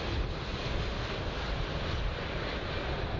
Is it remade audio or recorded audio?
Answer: remade